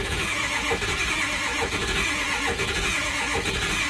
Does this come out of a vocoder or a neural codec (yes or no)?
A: yes